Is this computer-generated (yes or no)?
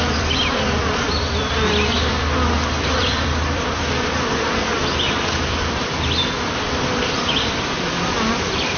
yes